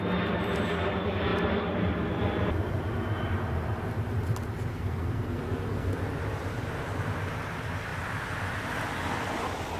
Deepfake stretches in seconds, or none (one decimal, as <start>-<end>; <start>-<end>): 4.7-6.0